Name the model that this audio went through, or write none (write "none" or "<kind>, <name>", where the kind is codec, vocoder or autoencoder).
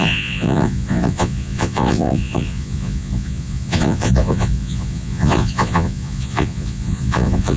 vocoder, Vocos